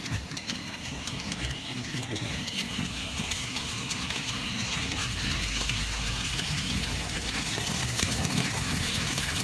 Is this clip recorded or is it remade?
remade